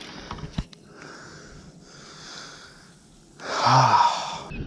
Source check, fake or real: real